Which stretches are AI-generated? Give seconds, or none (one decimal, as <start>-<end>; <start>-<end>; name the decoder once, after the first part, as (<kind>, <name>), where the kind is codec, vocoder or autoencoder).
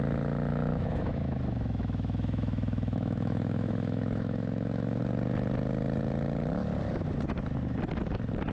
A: 0.5-5.0 (autoencoder, DAC-VAE)